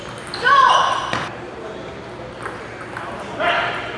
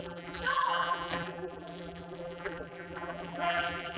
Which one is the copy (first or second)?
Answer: second